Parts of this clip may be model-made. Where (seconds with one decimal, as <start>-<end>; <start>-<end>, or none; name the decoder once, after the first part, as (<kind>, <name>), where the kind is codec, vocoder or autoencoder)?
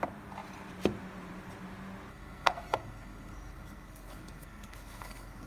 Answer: 2.1-5.5 (codec, SNAC)